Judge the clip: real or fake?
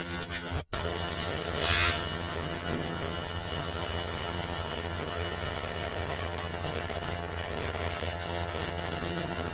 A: fake